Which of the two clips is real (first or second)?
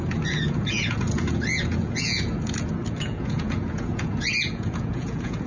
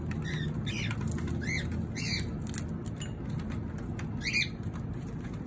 second